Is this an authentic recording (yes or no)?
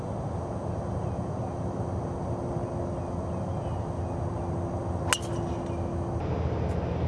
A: yes